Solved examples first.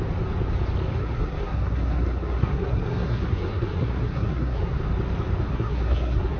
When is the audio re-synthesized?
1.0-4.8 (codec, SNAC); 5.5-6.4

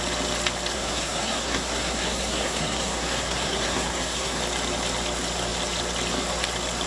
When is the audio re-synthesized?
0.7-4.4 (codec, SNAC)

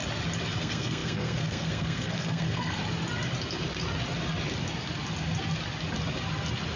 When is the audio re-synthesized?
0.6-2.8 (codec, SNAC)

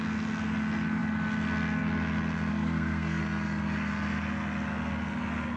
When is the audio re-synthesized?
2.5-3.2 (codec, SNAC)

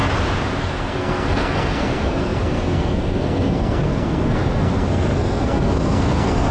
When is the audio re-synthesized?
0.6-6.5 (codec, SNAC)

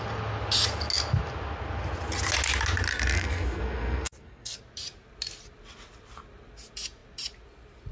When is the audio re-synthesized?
2.9-4.6 (codec, SNAC)

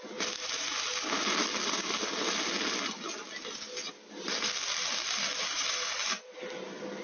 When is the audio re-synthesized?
none